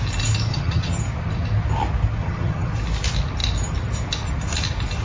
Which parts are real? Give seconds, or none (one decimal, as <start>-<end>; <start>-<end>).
0.0-0.5; 1.0-2.2; 2.7-5.0